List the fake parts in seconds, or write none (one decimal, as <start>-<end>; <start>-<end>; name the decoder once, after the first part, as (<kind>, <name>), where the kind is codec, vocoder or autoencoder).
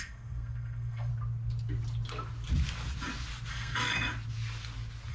0.0-1.1 (codec, SNAC); 3.5-3.9